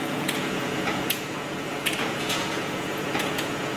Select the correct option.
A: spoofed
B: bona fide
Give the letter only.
A